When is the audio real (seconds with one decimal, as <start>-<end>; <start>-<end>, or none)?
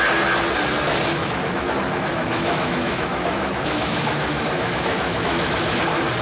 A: 0.0-1.2; 1.7-2.1; 5.8-6.2